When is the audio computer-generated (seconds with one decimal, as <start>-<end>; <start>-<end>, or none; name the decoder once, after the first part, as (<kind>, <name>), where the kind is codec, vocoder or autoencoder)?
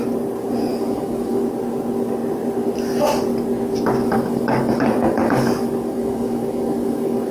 0.7-1.4 (codec, DAC); 4.0-7.3